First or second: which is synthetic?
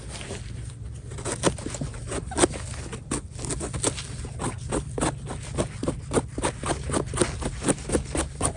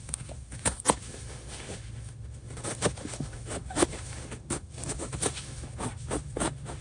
second